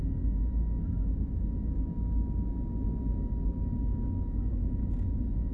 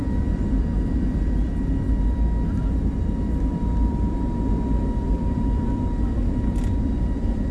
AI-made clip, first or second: second